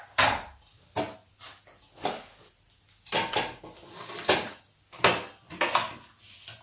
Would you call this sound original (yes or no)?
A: yes